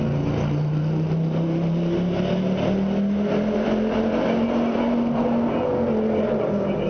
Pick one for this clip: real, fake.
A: real